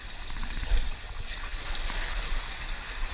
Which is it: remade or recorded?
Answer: remade